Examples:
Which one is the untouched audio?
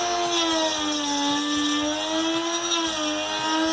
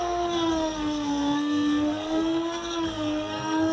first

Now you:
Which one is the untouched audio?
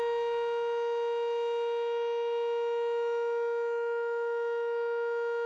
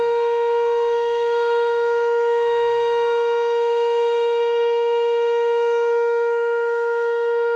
first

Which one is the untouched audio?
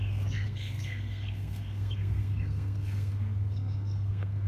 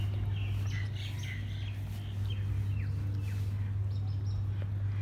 second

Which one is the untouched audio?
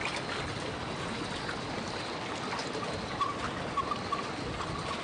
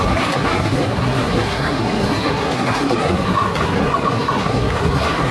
first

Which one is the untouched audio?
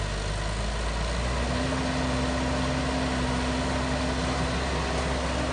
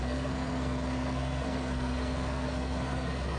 first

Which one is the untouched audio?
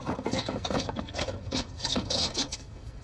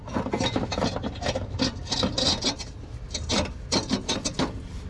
second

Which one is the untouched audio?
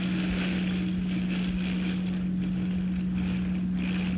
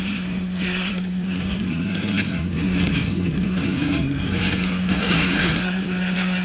first